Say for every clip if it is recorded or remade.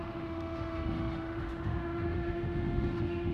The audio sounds remade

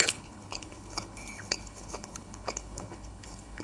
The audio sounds remade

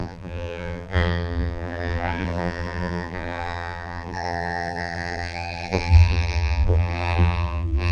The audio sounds remade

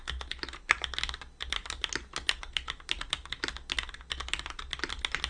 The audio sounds recorded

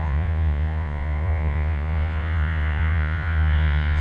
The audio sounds remade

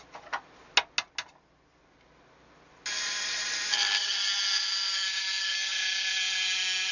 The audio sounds recorded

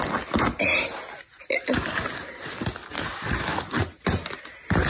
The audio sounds recorded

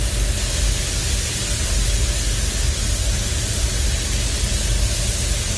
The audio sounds recorded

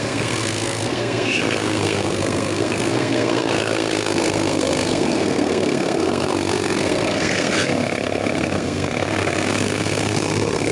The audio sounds remade